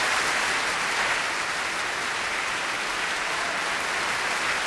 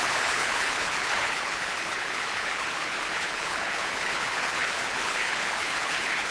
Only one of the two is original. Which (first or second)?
first